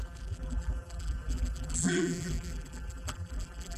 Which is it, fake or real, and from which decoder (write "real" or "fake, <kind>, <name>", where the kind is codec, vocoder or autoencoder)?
fake, vocoder, BigVGAN v2